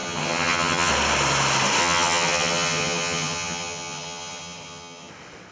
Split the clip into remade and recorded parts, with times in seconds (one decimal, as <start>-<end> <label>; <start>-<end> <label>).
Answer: 0.0-0.9 remade; 0.9-1.8 recorded; 1.8-5.1 remade; 5.1-5.5 recorded